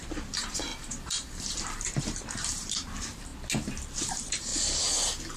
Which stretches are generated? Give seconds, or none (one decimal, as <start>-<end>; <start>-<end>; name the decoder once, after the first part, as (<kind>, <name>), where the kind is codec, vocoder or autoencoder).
0.0-3.3 (vocoder, BigVGAN v2); 4.1-4.5